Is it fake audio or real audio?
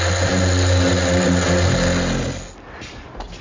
real